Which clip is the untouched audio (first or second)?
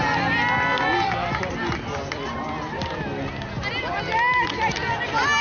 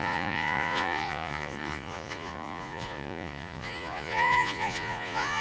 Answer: first